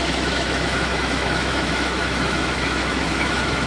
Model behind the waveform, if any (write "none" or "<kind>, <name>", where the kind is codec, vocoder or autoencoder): autoencoder, DAC-VAE